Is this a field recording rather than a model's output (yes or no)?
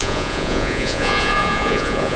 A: no